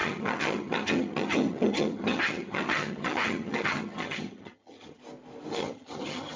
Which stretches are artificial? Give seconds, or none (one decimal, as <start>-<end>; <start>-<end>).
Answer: 0.0-5.0; 5.5-6.4